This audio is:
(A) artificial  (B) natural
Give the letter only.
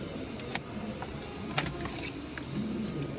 B